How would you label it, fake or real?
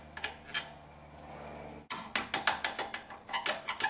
real